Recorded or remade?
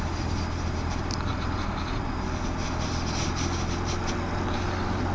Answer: recorded